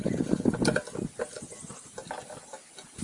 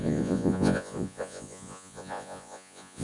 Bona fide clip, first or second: first